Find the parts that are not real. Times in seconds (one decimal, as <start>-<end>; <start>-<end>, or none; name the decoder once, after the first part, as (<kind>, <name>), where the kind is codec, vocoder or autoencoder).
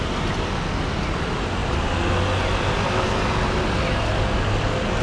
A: none